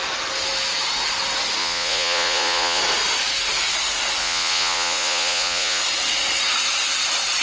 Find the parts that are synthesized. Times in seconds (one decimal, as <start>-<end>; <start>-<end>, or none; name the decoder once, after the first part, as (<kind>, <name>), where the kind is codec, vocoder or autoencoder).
1.6-2.8 (vocoder, Vocos); 4.2-5.8